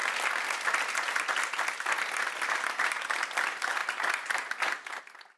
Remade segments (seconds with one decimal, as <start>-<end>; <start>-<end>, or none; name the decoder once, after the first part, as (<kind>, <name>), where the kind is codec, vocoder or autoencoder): none